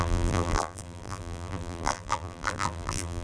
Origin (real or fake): fake